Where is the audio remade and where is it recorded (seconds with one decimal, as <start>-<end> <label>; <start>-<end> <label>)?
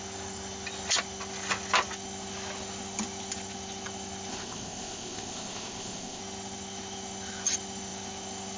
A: 0.0-4.3 recorded; 4.3-6.2 remade; 6.2-8.6 recorded